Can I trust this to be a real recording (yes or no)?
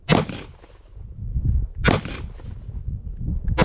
yes